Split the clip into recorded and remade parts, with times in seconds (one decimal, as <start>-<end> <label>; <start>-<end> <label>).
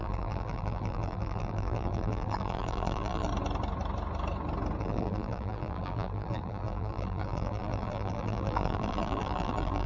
0.0-3.3 remade; 3.3-4.8 recorded; 4.8-9.9 remade